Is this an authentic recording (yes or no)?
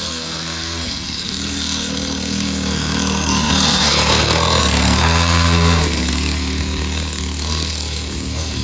no